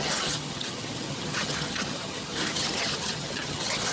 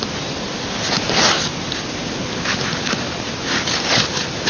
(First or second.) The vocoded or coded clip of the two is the first